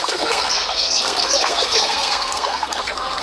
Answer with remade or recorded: remade